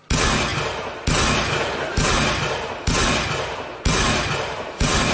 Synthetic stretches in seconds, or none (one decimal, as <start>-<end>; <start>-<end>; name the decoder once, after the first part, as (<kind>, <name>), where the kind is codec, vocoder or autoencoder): 3.7-5.1 (vocoder, BigVGAN v2)

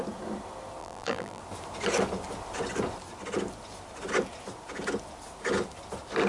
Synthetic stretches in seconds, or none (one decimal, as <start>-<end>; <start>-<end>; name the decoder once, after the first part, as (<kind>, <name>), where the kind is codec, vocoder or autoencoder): 0.8-1.4 (vocoder, BigVGAN v2)

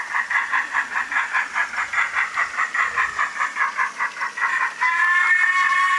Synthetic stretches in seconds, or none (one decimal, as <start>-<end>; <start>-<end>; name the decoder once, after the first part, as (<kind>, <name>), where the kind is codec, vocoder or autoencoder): none